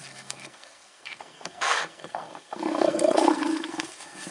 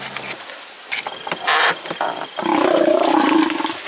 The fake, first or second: first